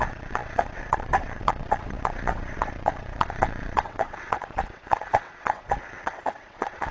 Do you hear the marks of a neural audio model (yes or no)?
yes